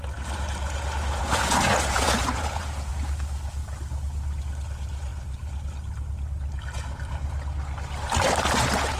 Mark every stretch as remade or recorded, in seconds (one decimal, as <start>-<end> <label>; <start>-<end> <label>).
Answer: 0.0-1.2 recorded; 1.2-2.9 remade; 2.9-9.0 recorded